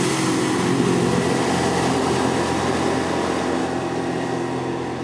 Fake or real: real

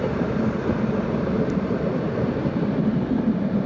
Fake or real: fake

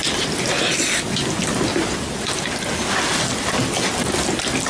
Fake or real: real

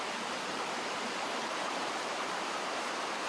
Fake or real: fake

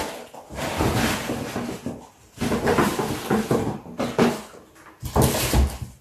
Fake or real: real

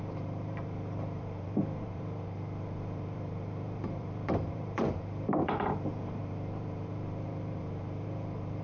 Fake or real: fake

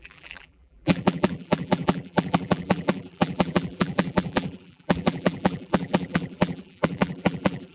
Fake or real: fake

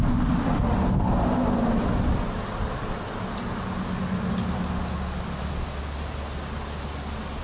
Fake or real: real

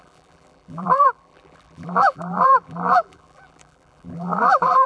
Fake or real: fake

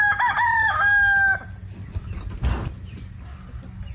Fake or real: real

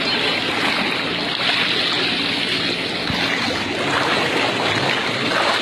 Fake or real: real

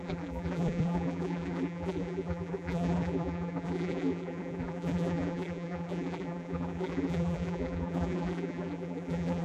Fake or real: fake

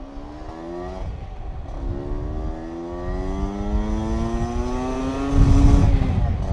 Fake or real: real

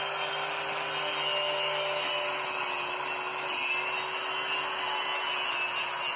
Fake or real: real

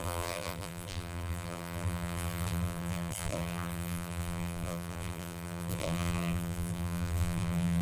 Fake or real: fake